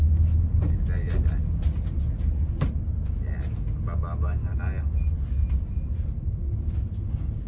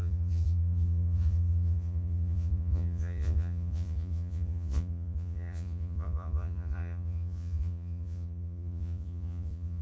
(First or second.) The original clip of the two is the first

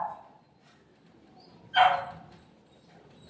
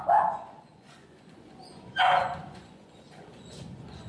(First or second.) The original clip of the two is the first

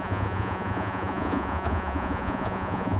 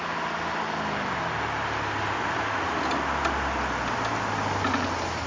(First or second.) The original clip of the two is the second